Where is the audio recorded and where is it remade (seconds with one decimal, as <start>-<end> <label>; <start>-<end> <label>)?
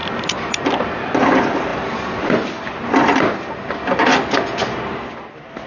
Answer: 0.0-5.7 recorded